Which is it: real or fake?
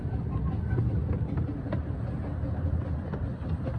real